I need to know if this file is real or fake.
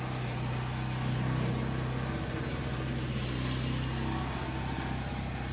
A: real